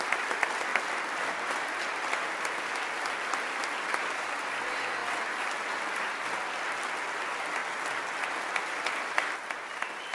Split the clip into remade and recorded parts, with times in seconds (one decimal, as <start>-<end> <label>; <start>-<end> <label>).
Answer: 0.0-10.1 recorded